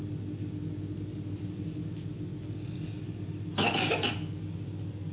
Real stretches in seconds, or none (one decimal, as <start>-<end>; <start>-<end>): 0.0-5.1